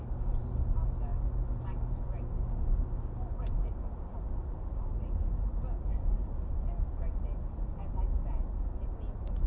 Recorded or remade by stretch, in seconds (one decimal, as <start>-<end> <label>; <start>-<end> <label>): 0.0-9.5 recorded